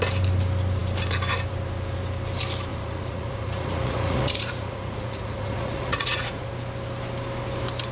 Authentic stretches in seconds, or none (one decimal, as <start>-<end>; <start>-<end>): 0.0-2.7; 6.5-7.9